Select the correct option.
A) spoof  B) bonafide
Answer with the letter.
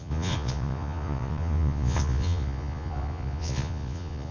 A